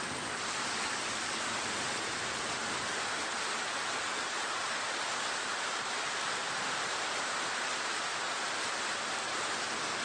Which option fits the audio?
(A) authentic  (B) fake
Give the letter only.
A